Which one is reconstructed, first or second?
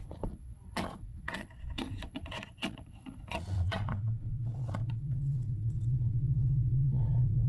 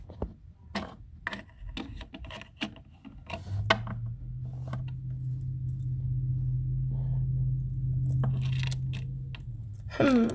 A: first